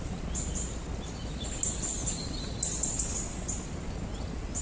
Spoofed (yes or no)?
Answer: no